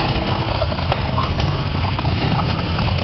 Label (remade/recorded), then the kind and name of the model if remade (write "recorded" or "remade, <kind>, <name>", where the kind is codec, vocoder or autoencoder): remade, codec, SNAC